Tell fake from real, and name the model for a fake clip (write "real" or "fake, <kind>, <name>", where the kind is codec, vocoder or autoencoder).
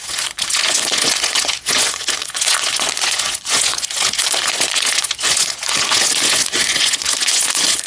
fake, vocoder, Vocos